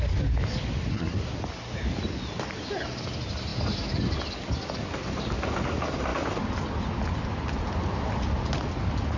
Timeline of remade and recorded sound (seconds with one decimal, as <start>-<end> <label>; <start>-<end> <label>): 0.0-0.9 recorded; 0.9-1.4 remade; 1.4-9.2 recorded